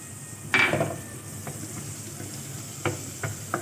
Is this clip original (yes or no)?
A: yes